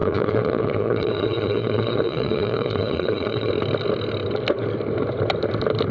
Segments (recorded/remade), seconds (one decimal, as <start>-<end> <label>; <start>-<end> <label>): 0.0-3.5 remade; 3.5-5.9 recorded